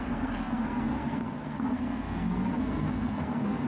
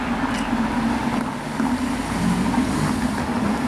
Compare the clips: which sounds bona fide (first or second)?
second